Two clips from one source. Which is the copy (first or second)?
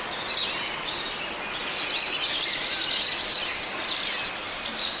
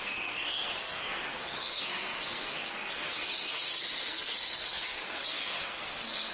second